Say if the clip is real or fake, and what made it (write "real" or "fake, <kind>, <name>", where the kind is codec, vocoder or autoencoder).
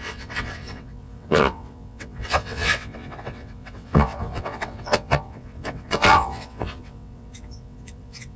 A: fake, vocoder, WaveNeXt